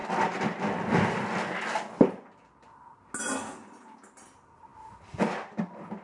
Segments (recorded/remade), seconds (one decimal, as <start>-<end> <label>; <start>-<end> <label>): 0.0-6.0 recorded